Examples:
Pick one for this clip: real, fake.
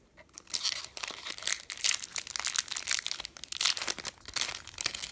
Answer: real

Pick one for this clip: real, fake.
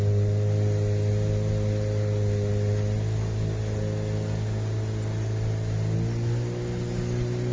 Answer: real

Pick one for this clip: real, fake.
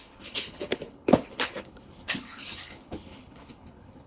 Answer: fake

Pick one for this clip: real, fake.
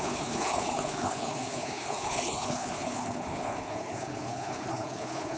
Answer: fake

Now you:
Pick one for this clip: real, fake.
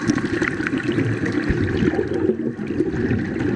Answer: real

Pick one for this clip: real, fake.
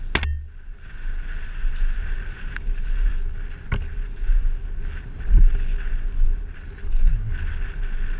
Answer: real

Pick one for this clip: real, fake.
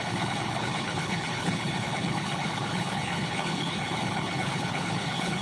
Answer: fake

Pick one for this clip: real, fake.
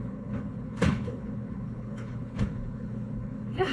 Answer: fake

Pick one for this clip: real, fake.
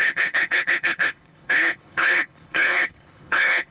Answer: fake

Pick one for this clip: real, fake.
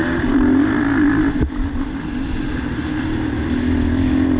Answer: real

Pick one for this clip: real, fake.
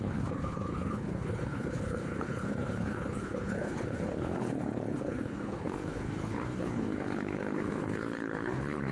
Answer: fake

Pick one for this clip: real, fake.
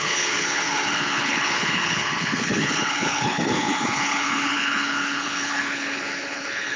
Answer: fake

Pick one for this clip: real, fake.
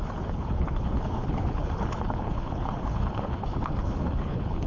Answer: fake